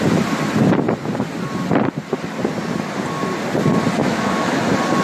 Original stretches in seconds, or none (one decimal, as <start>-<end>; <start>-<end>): 0.0-4.0; 4.5-5.0